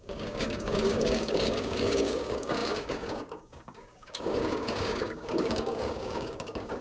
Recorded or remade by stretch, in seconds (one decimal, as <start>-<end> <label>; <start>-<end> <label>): 0.0-6.8 remade